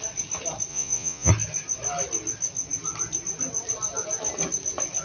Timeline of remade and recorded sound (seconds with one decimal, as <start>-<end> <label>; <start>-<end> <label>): 0.0-0.7 recorded; 0.7-1.3 remade; 1.3-5.0 recorded